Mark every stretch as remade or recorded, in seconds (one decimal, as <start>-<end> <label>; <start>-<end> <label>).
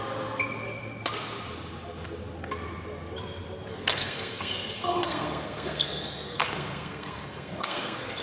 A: 0.0-3.7 recorded; 3.7-8.2 remade